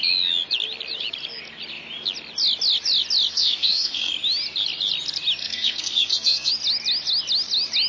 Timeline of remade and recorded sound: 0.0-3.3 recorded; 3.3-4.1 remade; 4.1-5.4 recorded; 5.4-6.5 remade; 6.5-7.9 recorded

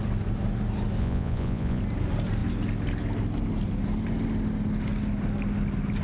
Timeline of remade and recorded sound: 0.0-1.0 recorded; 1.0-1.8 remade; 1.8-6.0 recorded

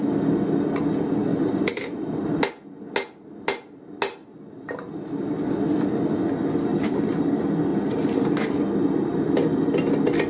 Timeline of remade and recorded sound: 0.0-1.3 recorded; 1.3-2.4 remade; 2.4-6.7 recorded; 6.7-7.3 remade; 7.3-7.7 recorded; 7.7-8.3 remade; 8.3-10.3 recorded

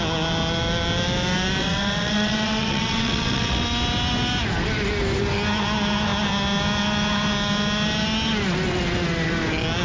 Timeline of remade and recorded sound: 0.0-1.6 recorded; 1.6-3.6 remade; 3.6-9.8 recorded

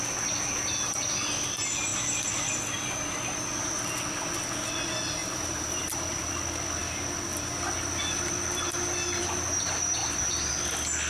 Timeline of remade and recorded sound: 0.0-5.2 recorded; 5.2-6.3 remade; 6.3-10.0 recorded; 10.0-10.5 remade; 10.5-11.1 recorded